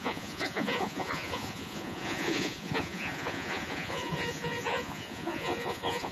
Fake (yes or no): yes